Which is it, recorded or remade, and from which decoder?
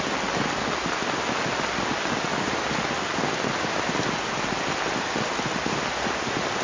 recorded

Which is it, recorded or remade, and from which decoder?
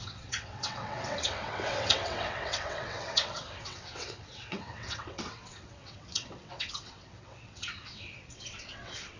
remade, vocoder, WaveNeXt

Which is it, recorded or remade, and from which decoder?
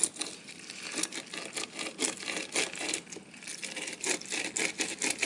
recorded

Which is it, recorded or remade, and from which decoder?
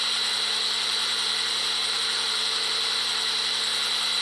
remade, vocoder, BigVGAN v2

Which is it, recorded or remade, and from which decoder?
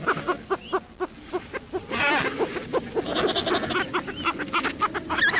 recorded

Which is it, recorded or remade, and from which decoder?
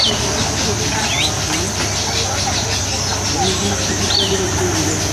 recorded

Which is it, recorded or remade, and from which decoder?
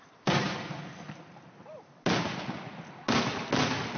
recorded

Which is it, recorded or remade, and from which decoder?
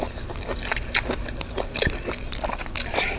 recorded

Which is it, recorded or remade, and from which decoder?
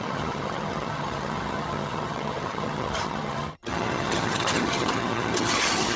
remade, vocoder, HiFi-GAN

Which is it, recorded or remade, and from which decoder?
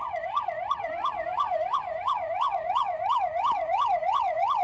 remade, vocoder, Vocos